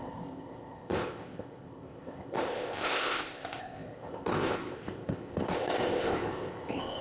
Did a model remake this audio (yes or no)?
yes